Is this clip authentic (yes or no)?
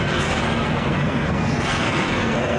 no